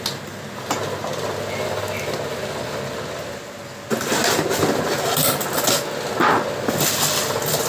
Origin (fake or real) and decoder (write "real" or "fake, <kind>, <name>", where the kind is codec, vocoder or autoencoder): real